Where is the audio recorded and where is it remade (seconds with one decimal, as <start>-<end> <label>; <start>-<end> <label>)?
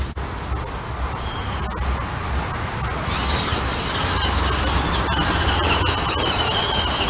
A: 0.0-7.1 recorded